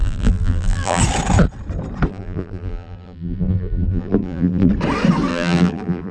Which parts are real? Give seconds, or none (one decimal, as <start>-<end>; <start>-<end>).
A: 1.0-2.1; 4.7-5.3